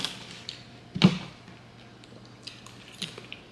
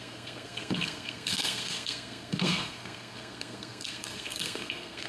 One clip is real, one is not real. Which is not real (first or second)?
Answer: second